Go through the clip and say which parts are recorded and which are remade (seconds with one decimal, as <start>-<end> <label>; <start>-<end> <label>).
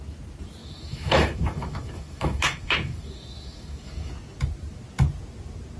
0.0-0.6 recorded; 0.6-4.1 remade; 4.1-5.8 recorded